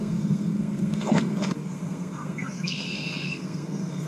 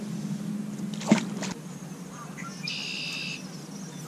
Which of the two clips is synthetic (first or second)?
first